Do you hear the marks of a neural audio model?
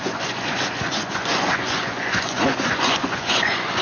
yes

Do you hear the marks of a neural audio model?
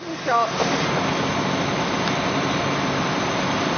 no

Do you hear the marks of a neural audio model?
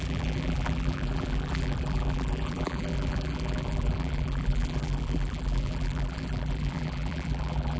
yes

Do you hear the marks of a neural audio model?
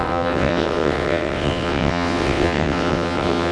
yes